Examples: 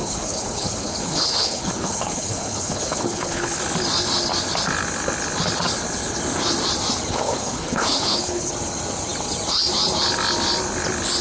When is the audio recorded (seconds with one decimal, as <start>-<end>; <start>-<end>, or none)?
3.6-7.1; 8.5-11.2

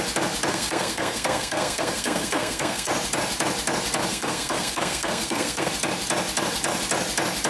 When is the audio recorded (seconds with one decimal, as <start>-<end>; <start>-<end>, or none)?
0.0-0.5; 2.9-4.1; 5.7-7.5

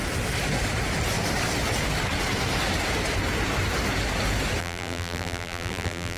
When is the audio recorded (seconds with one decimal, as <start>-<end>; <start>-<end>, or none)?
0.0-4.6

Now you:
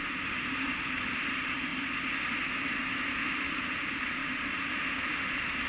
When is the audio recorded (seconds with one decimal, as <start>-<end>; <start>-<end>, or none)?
1.7-2.8

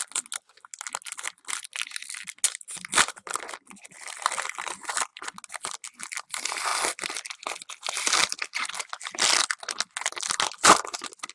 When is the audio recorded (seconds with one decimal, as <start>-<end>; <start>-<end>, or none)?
0.0-11.3

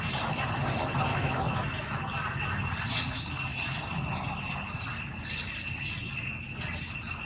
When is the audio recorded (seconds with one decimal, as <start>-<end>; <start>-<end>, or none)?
0.0-1.1; 2.0-7.3

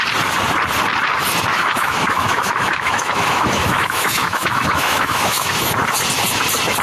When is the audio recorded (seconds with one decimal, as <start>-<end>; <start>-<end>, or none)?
0.0-1.5; 5.5-6.8